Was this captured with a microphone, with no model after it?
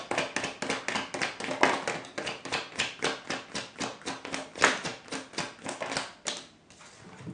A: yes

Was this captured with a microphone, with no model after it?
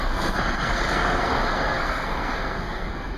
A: no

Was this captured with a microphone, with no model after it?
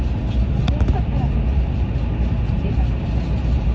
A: yes